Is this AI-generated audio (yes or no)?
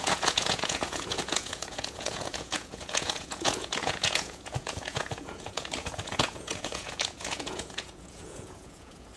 yes